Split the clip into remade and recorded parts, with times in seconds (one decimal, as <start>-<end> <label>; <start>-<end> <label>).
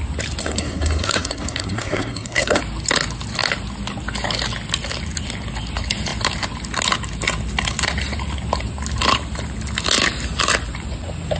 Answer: 0.0-0.4 recorded; 0.4-2.6 remade; 2.6-11.4 recorded